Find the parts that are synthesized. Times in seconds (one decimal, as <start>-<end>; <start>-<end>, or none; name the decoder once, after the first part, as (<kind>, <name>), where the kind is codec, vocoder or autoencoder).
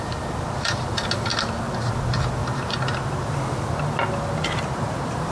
0.0-1.3 (vocoder, BigVGAN v2); 1.8-5.3